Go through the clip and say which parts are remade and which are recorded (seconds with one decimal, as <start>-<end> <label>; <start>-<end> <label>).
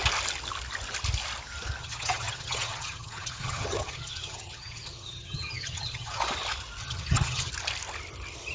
0.0-1.8 recorded; 1.8-6.2 remade; 6.2-6.8 recorded; 6.8-7.5 remade; 7.5-8.5 recorded